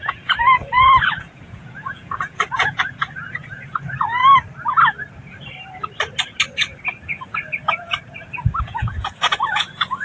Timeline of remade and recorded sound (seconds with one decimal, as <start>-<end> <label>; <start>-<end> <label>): 0.0-4.2 remade; 4.2-8.6 recorded; 8.6-10.0 remade